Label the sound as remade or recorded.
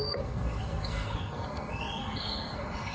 remade